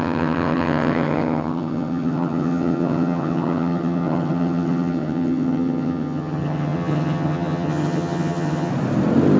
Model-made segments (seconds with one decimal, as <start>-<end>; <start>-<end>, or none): 0.0-8.7